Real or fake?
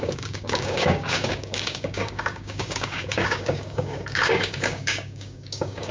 fake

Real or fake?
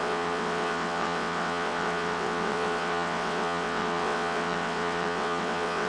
fake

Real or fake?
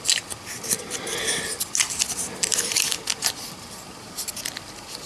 real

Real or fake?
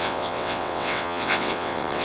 fake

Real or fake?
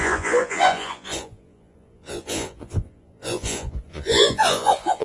fake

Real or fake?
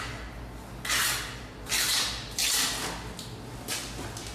real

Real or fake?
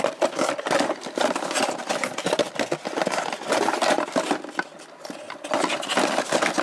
real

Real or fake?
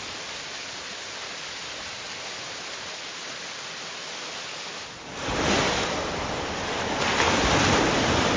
real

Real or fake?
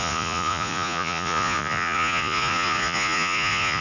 fake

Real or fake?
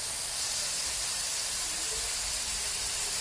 fake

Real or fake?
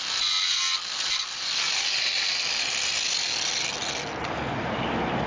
real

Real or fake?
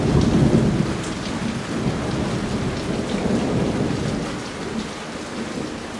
real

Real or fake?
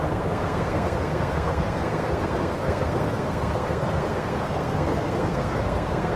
fake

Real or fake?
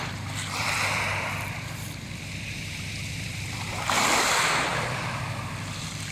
fake